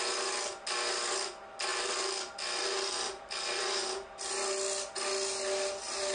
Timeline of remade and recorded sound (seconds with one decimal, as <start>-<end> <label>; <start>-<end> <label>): 0.0-1.7 recorded; 1.7-4.1 remade; 4.1-6.1 recorded